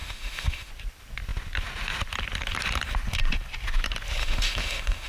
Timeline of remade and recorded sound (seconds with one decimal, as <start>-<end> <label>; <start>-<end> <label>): 0.0-0.7 remade; 0.7-4.2 recorded; 4.2-5.1 remade